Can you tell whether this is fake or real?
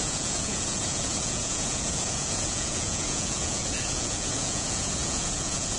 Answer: fake